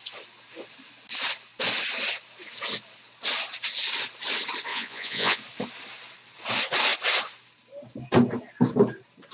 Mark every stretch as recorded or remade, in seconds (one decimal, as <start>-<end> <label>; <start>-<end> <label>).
0.0-4.7 recorded; 4.7-5.4 remade; 5.4-9.3 recorded